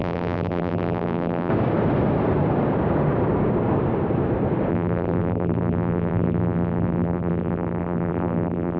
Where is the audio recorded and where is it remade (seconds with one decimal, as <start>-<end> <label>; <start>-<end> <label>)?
0.0-1.5 remade; 1.5-4.7 recorded; 4.7-8.8 remade